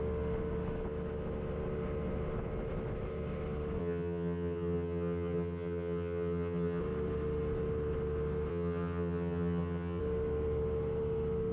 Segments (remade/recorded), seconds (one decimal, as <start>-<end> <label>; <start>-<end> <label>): 0.0-3.8 recorded; 3.8-6.8 remade; 6.8-8.5 recorded; 8.5-10.0 remade; 10.0-11.5 recorded